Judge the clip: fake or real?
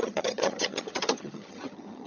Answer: fake